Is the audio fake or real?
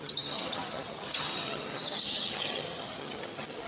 fake